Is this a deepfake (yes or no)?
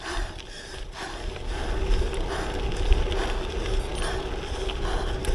no